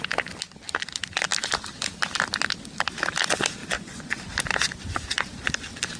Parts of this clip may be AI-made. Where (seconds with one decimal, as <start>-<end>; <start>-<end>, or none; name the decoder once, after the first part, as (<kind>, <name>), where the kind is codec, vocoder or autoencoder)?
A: 3.6-4.2 (vocoder, Vocos)